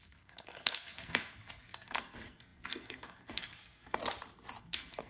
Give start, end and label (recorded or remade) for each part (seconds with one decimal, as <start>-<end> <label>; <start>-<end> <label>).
0.0-4.0 remade; 4.0-4.6 recorded; 4.6-5.1 remade